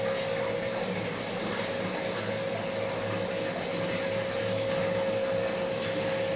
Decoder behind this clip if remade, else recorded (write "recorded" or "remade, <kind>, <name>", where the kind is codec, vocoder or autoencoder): recorded